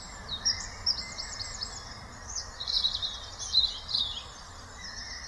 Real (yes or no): no